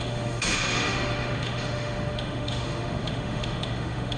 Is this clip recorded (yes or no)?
no